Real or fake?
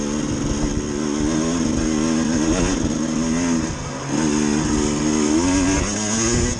real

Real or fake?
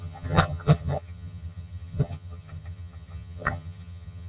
fake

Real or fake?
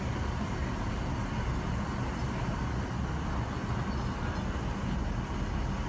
real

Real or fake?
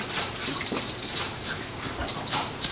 fake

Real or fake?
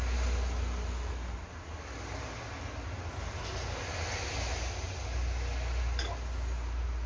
real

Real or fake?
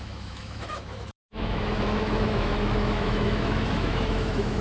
fake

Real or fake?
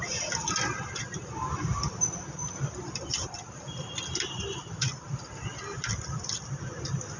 real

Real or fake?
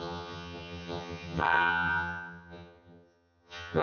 fake